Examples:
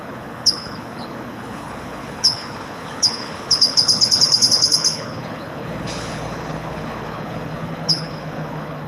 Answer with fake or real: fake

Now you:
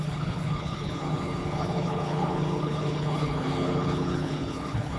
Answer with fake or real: fake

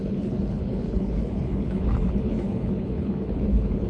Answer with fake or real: fake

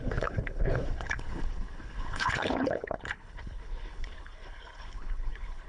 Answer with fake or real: fake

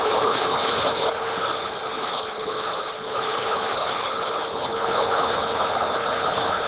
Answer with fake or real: fake